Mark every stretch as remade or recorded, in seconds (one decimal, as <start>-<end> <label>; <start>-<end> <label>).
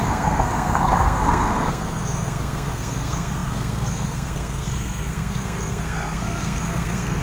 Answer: 0.0-7.2 remade